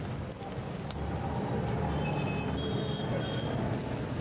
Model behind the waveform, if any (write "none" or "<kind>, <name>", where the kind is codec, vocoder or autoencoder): none